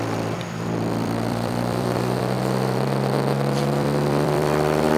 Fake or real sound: fake